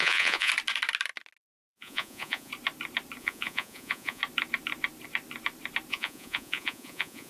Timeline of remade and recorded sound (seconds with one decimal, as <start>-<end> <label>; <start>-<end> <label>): 0.0-0.5 remade; 0.5-1.4 recorded; 1.4-2.5 remade; 2.5-3.2 recorded; 3.2-4.2 remade; 4.2-5.9 recorded; 5.9-7.3 remade